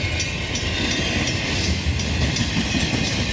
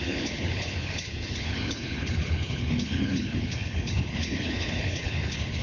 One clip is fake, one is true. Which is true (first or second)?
first